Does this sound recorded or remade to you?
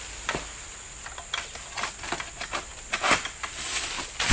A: recorded